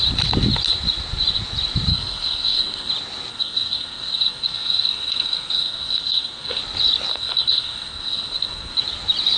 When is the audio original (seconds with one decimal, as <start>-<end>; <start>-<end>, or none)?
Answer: 0.0-1.9; 2.9-3.3; 6.6-7.1; 8.8-9.4